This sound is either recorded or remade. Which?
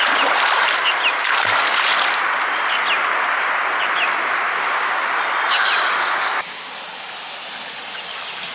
recorded